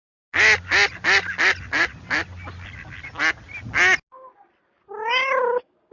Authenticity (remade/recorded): recorded